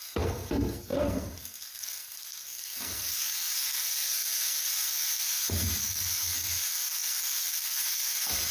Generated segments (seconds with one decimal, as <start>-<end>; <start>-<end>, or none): 0.0-8.5